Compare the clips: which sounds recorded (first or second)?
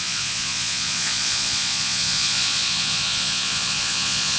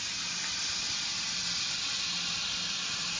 second